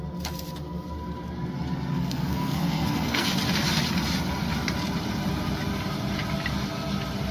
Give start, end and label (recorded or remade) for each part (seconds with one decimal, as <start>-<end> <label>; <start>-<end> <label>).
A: 0.0-1.9 recorded; 1.9-3.3 remade; 3.3-7.3 recorded